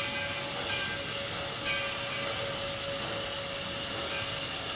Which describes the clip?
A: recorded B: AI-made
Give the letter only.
A